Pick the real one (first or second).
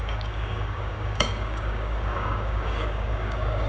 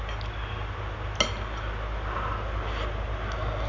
second